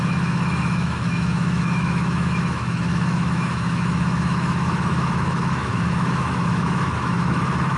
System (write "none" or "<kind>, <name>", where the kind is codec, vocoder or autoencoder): autoencoder, DAC-VAE